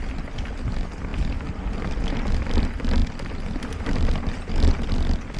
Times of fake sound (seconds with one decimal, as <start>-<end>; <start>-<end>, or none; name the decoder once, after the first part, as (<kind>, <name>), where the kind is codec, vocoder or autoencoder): none